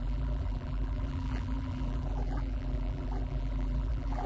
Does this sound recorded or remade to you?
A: remade